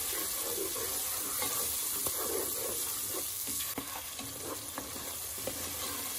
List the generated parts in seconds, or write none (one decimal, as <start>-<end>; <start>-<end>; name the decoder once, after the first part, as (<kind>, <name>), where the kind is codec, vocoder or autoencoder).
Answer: 3.3-4.1 (codec, SNAC)

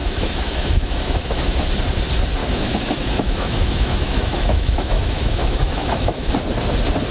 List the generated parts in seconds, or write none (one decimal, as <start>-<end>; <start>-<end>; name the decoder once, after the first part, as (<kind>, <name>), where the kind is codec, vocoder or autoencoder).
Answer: 0.0-1.7 (autoencoder, DAC-VAE); 2.4-6.3

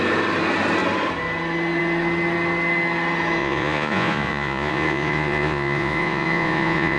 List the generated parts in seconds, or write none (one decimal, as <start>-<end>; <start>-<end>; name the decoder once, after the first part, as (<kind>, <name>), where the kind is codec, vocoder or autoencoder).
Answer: 3.4-7.0 (vocoder, Vocos)

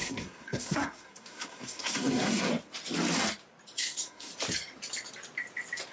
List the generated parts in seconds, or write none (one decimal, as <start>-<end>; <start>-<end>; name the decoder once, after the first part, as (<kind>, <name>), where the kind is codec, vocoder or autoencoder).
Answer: 0.0-2.5 (codec, SNAC); 3.8-4.3